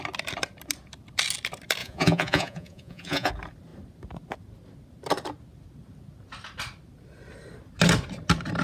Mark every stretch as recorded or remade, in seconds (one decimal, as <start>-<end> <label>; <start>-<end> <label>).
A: 0.0-1.8 recorded; 1.8-3.3 remade; 3.3-8.6 recorded